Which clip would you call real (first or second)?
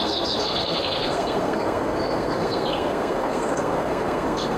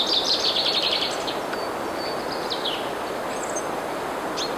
second